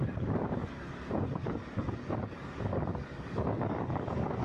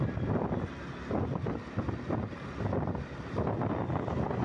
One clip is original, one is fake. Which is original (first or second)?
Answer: second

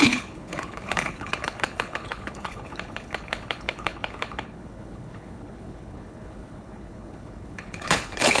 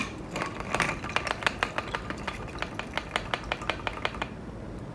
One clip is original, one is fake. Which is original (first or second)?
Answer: second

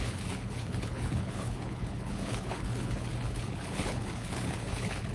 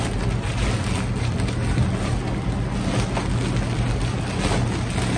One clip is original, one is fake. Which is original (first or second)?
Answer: second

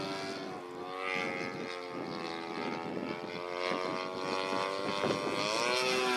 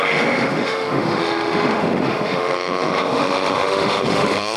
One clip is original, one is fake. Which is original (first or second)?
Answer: first